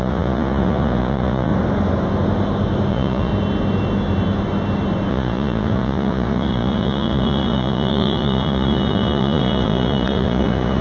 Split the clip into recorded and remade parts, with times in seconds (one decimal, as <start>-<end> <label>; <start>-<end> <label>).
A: 0.0-1.5 remade; 1.5-2.9 recorded; 2.9-3.3 remade; 3.3-5.1 recorded; 5.1-10.8 remade